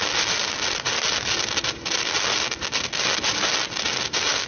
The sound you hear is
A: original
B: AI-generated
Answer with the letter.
A